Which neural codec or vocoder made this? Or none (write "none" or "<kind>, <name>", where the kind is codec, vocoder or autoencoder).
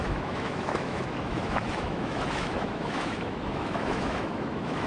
autoencoder, DAC-VAE